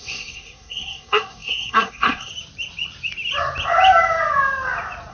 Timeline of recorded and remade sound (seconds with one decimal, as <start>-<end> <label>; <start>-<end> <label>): 0.0-2.3 remade; 2.3-5.1 recorded